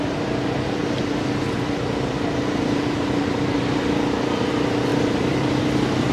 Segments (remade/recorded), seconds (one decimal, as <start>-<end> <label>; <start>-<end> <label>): 0.0-4.9 recorded; 4.9-5.6 remade; 5.6-6.1 recorded